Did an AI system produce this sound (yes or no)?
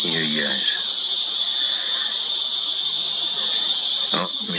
no